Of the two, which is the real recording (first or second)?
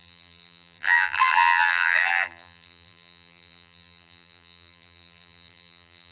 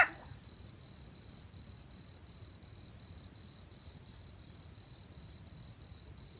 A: second